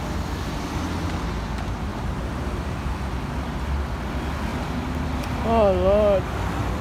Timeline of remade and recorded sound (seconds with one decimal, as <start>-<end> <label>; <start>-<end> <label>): 0.0-1.9 recorded; 1.9-2.9 remade; 2.9-6.8 recorded